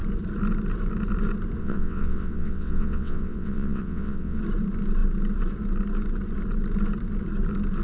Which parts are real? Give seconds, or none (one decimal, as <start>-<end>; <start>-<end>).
0.0-1.6; 4.4-7.8